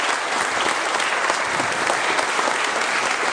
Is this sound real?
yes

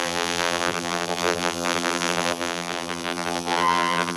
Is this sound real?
no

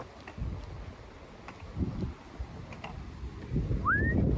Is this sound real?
yes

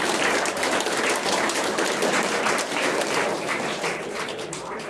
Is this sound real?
no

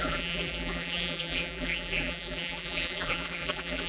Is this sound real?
no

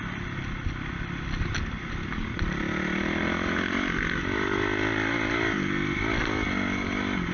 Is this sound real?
yes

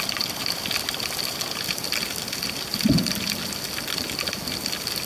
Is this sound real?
yes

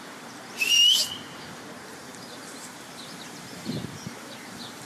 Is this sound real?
no